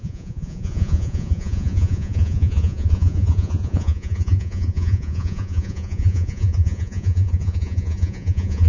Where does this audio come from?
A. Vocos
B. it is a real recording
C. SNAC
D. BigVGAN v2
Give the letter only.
A